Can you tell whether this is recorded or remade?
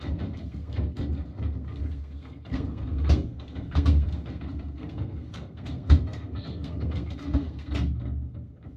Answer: remade